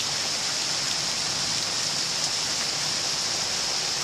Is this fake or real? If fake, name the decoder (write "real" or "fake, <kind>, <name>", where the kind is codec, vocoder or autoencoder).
real